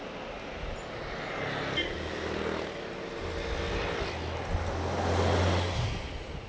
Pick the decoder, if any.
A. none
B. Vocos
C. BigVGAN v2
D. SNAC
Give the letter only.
A